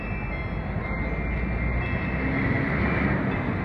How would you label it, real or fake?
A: real